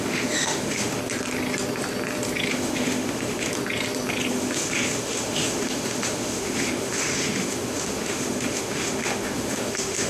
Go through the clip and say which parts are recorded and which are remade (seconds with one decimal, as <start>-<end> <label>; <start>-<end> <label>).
0.0-1.0 remade; 1.0-2.5 recorded; 2.5-3.5 remade; 3.5-4.3 recorded; 4.3-10.1 remade